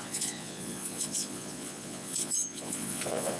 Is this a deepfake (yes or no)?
yes